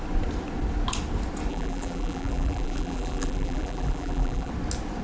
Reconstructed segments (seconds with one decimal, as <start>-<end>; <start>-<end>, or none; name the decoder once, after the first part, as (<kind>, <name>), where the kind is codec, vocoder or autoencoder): 1.5-4.5 (vocoder, BigVGAN v2)